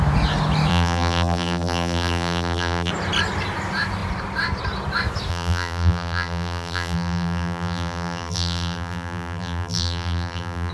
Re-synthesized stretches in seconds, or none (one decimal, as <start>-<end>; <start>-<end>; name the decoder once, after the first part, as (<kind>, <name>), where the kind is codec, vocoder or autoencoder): 0.7-2.9 (vocoder, BigVGAN v2); 5.3-10.7